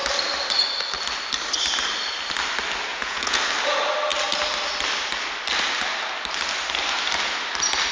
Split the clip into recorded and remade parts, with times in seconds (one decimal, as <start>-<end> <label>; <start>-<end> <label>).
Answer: 0.0-2.9 recorded; 2.9-3.4 remade; 3.4-7.9 recorded

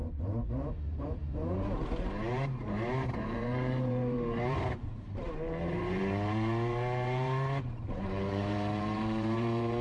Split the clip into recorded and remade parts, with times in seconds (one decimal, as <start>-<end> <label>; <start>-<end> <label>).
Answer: 0.0-9.8 remade

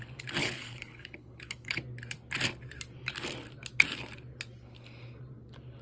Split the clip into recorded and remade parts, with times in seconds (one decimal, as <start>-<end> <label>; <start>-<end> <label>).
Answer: 0.0-0.4 recorded; 0.4-1.8 remade; 1.8-5.8 recorded

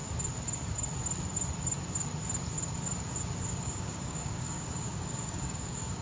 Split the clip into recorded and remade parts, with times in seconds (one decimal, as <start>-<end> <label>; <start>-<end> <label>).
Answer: 0.0-3.6 recorded; 3.6-6.0 remade